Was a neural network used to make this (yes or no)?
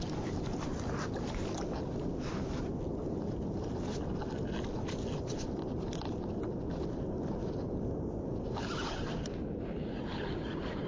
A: no